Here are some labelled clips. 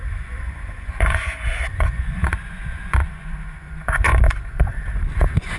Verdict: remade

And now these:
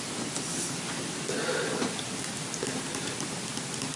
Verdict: recorded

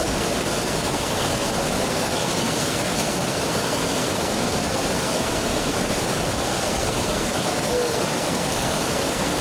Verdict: remade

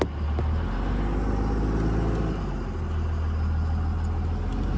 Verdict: recorded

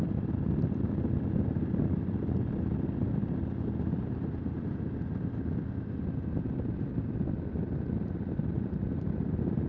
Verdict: remade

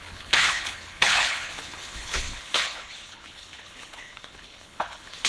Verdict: remade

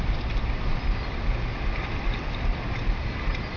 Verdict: recorded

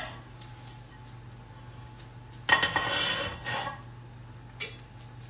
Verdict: recorded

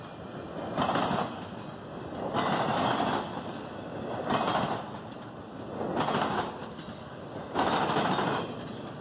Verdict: recorded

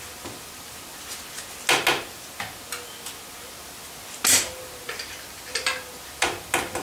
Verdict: recorded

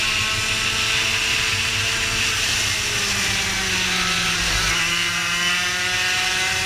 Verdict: recorded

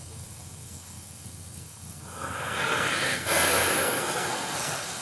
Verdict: remade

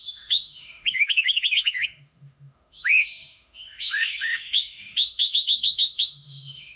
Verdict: remade